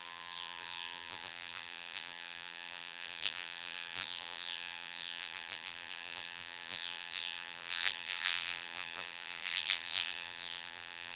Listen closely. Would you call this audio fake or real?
fake